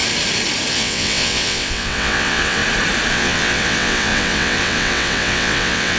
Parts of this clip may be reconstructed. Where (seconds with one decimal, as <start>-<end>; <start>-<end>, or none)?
0.7-2.6; 3.1-6.0